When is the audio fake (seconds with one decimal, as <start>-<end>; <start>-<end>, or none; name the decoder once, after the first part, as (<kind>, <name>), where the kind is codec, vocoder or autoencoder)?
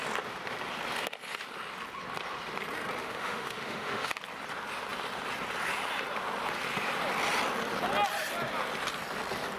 3.0-4.1 (autoencoder, DAC-VAE)